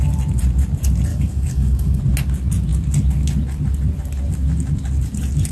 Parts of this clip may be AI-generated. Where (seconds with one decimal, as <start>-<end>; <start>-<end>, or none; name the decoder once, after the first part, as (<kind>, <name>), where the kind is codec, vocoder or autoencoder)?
1.1-2.0 (codec, DAC)